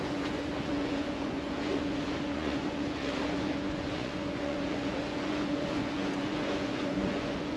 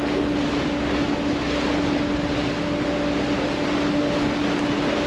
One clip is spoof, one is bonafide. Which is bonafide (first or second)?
second